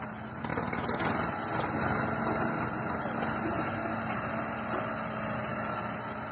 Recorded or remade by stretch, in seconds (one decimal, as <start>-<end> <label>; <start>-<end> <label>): 0.0-6.3 recorded